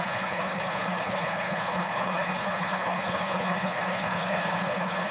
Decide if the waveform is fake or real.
fake